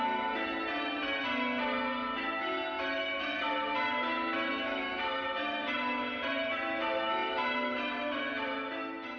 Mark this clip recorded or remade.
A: recorded